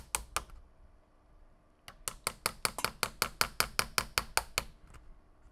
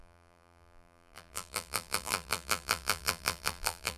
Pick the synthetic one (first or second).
second